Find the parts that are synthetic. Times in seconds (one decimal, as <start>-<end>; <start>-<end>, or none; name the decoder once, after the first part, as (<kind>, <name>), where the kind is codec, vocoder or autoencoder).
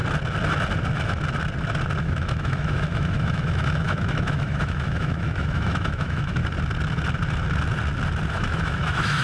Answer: 2.0-6.4 (autoencoder, DAC-VAE); 8.3-9.2